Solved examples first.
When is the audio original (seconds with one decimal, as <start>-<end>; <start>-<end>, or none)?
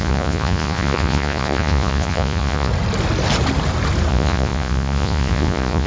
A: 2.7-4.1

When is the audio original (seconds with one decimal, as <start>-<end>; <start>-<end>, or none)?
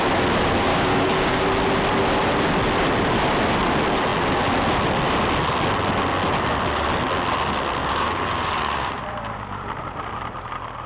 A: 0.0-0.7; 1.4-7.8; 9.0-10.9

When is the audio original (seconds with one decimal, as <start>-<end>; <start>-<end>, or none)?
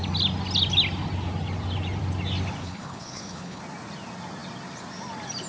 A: 0.0-2.6; 3.6-5.5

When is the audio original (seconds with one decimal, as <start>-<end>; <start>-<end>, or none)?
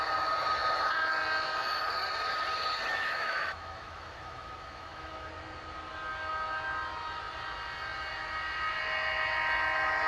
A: 0.0-2.9; 5.3-10.1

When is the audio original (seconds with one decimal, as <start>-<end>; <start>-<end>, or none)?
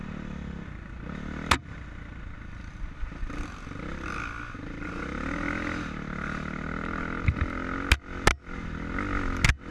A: 0.0-9.7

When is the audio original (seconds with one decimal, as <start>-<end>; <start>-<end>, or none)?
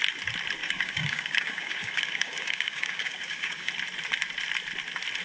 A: 0.0-0.6; 3.7-5.2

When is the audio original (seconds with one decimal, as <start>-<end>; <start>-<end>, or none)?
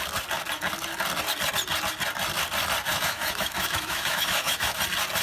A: 0.0-2.9; 4.8-5.2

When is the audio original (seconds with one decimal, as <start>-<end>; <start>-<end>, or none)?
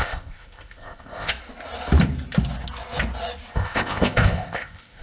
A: 1.3-3.5